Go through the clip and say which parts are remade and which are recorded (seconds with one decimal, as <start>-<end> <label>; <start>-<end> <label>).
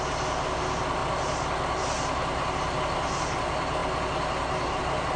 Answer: 0.0-1.0 recorded; 1.0-2.7 remade; 2.7-5.2 recorded